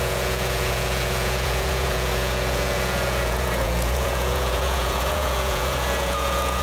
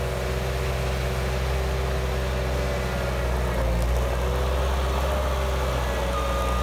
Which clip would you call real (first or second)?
second